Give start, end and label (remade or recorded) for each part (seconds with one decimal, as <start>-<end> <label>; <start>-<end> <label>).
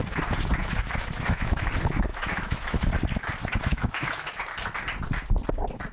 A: 0.0-0.6 recorded; 0.6-1.7 remade; 1.7-2.1 recorded; 2.1-2.9 remade; 2.9-3.4 recorded; 3.4-4.4 remade; 4.4-5.9 recorded